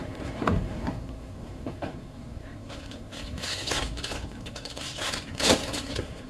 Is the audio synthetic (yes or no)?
yes